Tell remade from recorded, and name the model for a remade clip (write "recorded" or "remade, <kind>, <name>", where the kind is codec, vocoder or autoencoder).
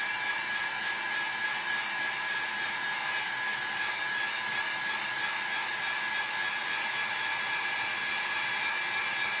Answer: recorded